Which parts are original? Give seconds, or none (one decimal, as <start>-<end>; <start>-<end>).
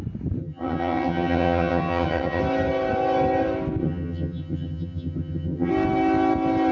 0.0-0.4; 2.4-3.8; 5.7-6.7